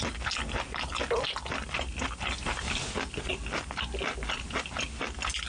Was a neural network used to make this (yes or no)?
no